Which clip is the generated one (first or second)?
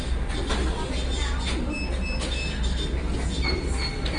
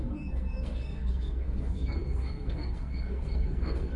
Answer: second